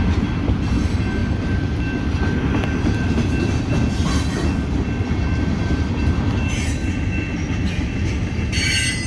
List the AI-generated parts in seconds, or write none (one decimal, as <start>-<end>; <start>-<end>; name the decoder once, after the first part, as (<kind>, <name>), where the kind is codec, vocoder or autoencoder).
none